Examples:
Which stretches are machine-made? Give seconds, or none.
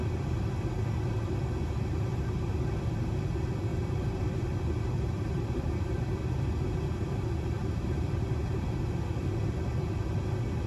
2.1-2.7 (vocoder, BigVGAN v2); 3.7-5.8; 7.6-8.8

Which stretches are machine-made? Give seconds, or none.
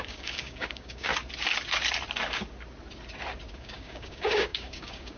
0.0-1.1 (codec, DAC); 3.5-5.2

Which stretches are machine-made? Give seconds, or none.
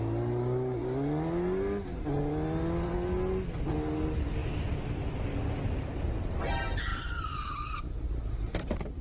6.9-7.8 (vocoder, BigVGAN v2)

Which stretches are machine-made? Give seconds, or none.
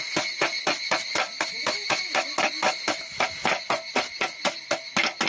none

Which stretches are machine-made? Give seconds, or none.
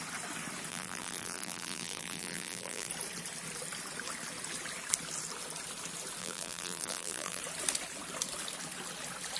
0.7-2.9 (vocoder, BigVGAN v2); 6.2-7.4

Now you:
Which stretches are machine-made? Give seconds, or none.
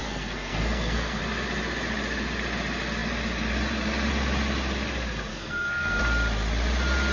0.0-1.2 (codec, SNAC); 5.3-6.0